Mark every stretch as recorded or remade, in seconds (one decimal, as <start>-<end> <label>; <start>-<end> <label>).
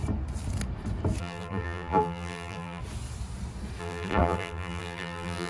0.0-1.2 recorded; 1.2-2.8 remade; 2.8-3.8 recorded; 3.8-5.5 remade